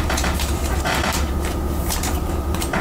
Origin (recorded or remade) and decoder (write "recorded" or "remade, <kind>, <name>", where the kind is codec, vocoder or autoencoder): remade, vocoder, BigVGAN v2